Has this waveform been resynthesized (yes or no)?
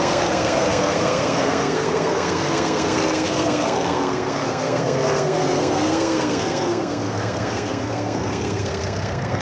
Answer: yes